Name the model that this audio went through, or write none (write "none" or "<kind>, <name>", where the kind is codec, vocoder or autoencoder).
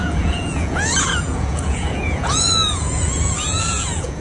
vocoder, Vocos